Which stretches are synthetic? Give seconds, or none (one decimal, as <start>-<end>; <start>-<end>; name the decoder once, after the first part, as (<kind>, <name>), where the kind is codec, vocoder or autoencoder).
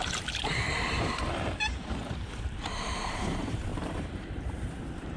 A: 0.0-5.2 (vocoder, BigVGAN v2)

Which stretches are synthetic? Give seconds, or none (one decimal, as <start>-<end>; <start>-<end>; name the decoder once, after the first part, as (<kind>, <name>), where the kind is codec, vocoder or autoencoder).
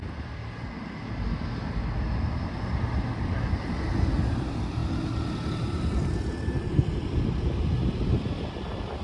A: 0.0-0.4 (vocoder, BigVGAN v2); 2.0-9.0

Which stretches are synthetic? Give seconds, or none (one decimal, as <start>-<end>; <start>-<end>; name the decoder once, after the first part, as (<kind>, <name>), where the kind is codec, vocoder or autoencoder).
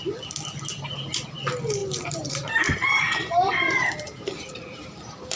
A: 1.8-5.0 (vocoder, BigVGAN v2)